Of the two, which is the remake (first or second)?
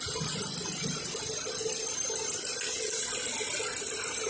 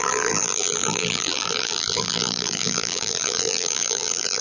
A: second